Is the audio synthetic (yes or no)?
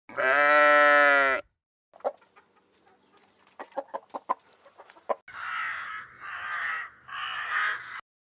no